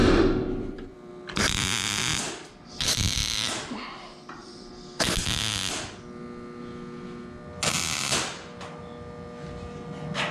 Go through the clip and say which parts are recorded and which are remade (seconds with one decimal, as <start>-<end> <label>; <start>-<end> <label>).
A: 0.0-1.1 remade; 1.1-3.2 recorded; 3.2-4.7 remade; 4.7-10.3 recorded